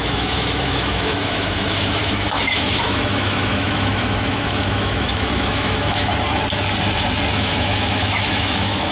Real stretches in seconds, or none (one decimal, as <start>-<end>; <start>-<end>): 6.1-7.3